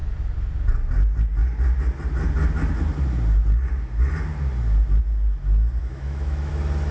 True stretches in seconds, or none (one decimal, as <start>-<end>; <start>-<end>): 0.0-5.8; 6.5-6.9